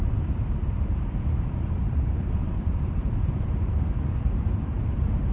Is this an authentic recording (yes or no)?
no